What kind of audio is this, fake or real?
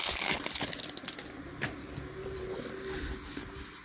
real